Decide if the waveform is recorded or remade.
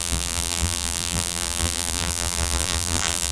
remade